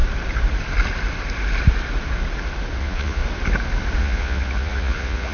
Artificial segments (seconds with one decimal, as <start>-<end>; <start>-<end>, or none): 2.8-3.2; 4.0-5.3